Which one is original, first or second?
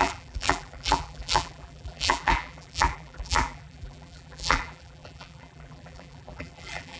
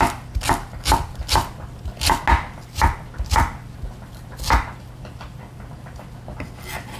second